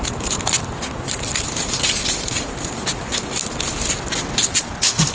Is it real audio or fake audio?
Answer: real